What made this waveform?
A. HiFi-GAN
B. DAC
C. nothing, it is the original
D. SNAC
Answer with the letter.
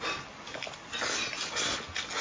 C